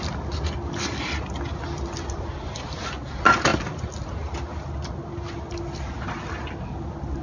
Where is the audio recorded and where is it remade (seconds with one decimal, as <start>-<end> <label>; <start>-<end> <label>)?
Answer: 0.0-7.2 recorded